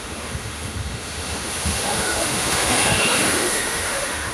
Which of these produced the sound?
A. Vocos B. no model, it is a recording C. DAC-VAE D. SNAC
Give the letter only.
C